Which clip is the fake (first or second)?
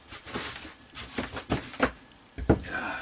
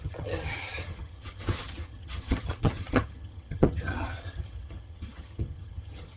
second